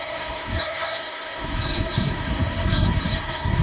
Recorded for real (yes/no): no